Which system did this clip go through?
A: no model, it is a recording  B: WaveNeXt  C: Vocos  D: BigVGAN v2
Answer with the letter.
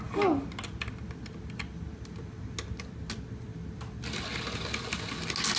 A